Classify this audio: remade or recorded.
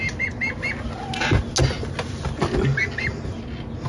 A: recorded